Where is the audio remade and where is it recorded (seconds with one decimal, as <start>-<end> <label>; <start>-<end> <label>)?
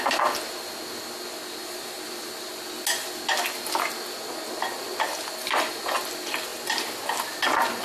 0.0-1.6 recorded; 1.6-2.5 remade; 2.5-5.4 recorded; 5.4-5.9 remade; 5.9-7.8 recorded